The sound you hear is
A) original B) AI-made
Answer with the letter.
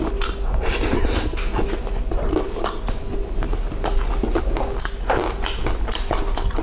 A